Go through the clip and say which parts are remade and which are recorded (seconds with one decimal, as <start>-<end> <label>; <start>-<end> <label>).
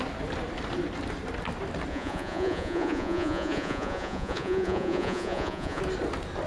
0.0-1.9 recorded; 1.9-5.8 remade; 5.8-6.5 recorded